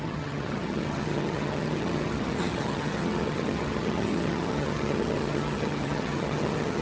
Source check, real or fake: fake